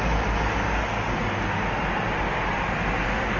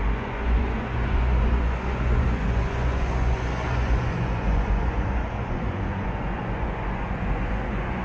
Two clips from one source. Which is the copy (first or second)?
second